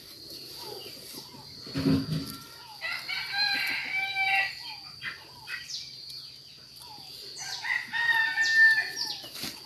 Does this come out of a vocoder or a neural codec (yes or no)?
no